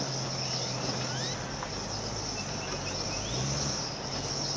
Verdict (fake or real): real